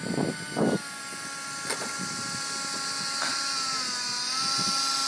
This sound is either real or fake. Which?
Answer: real